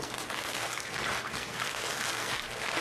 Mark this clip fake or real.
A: fake